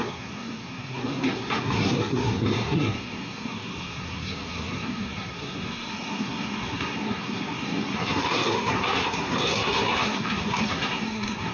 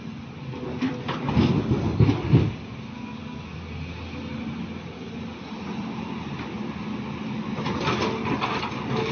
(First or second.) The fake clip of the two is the first